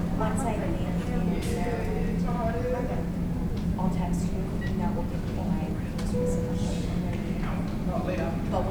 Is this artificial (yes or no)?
no